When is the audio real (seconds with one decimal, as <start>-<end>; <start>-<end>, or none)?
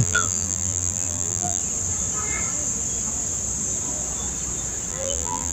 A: 1.6-4.9